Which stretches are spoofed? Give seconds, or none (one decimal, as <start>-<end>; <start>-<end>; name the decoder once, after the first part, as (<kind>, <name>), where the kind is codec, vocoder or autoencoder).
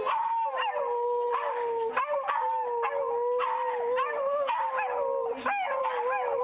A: 1.3-1.9 (autoencoder, DAC-VAE)